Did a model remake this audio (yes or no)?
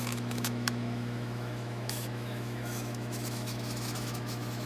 yes